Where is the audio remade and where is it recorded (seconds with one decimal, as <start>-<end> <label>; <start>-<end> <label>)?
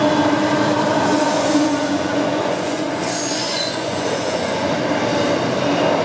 0.0-1.1 recorded; 1.1-4.7 remade; 4.7-6.0 recorded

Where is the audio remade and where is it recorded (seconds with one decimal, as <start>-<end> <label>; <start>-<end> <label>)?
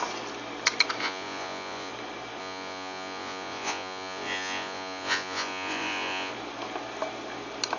0.0-1.0 recorded; 1.0-1.9 remade; 1.9-2.4 recorded; 2.4-6.3 remade; 6.3-7.8 recorded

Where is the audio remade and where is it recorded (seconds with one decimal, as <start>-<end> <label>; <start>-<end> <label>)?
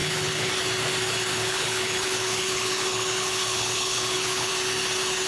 0.0-0.5 remade; 0.5-1.3 recorded; 1.3-4.5 remade; 4.5-5.3 recorded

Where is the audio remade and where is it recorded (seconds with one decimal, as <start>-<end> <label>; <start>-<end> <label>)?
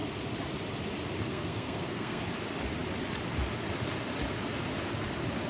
0.0-1.2 recorded; 1.2-2.2 remade; 2.2-5.5 recorded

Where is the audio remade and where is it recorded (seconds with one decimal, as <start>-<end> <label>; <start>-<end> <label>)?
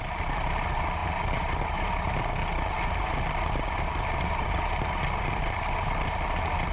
0.0-6.7 recorded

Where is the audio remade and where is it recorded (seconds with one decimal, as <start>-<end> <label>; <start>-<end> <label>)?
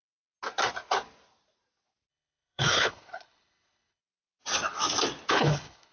0.0-2.1 recorded; 2.1-4.0 remade; 4.0-5.3 recorded; 5.3-5.9 remade